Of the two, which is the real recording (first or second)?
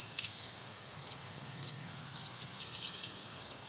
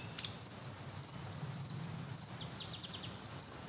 second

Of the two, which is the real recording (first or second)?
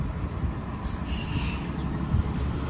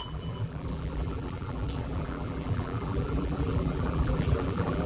first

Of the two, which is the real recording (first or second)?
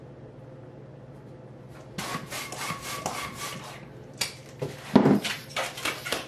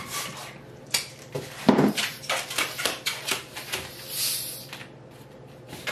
first